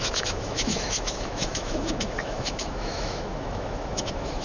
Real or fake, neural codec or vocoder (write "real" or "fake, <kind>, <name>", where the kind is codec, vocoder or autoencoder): fake, autoencoder, DAC-VAE